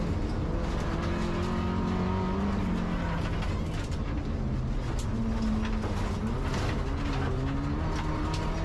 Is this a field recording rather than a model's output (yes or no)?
yes